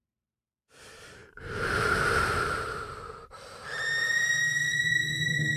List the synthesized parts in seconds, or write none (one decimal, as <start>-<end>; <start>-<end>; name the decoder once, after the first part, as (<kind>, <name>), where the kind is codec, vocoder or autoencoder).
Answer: 0.0-5.6 (vocoder, BigVGAN v2)